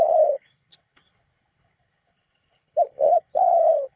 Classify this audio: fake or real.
fake